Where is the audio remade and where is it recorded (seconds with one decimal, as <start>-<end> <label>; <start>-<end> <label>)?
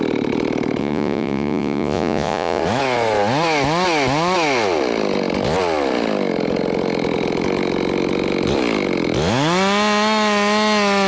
0.0-0.8 recorded; 0.8-2.6 remade; 2.6-11.1 recorded